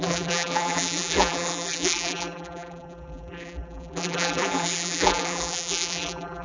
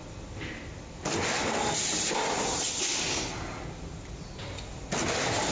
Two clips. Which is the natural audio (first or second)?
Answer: second